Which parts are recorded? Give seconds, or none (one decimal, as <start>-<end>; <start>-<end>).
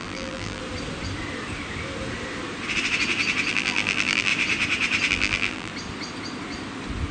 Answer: 0.6-3.5; 4.3-5.1; 5.7-7.1